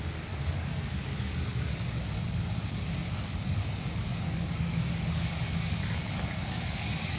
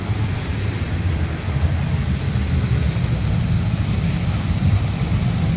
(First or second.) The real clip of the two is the second